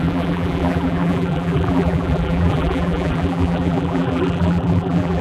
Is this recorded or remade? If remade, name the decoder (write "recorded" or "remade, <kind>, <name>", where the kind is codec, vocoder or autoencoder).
remade, vocoder, BigVGAN v2